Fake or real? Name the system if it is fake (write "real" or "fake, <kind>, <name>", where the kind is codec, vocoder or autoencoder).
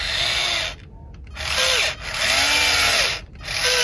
real